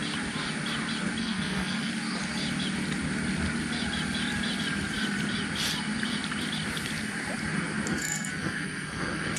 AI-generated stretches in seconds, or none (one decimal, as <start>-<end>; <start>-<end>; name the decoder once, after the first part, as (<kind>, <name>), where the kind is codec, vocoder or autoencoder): 1.2-1.9 (codec, SNAC); 7.9-9.4